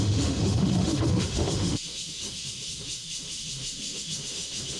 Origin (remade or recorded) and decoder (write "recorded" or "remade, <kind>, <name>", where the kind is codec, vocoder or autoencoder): remade, autoencoder, DAC-VAE